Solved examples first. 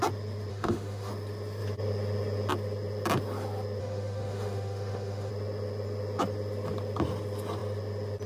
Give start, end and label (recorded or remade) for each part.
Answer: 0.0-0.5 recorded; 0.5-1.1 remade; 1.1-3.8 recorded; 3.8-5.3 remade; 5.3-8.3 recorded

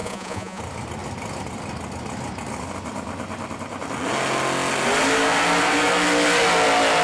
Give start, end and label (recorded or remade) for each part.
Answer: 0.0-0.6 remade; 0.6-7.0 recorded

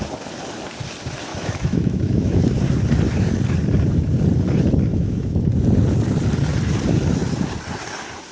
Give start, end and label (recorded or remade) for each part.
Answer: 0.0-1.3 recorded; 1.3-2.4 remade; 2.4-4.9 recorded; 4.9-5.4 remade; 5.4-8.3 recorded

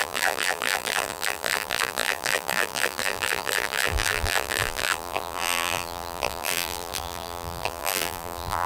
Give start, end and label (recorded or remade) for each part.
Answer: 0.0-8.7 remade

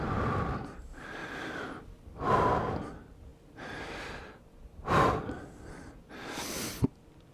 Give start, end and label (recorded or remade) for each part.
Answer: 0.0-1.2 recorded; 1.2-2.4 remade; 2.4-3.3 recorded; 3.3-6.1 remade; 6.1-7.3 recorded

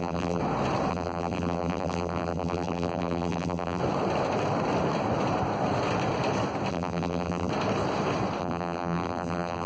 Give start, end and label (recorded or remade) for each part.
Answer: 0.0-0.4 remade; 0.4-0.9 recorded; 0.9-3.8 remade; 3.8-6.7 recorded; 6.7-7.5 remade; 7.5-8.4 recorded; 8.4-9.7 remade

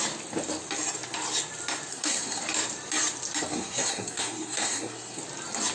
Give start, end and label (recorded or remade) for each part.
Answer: 0.0-1.9 recorded; 1.9-2.4 remade; 2.4-3.5 recorded; 3.5-5.2 remade; 5.2-5.7 recorded